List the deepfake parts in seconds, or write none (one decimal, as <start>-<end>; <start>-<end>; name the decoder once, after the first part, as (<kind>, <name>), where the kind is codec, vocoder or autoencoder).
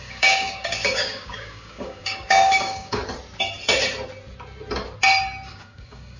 0.0-3.0 (codec, DAC); 5.5-6.2